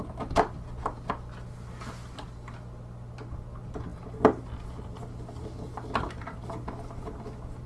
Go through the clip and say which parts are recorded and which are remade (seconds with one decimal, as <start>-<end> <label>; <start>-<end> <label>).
0.0-7.7 recorded